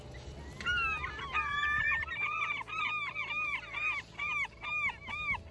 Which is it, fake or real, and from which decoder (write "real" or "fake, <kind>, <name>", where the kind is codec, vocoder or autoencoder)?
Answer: real